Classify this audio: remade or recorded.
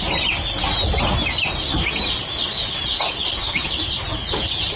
recorded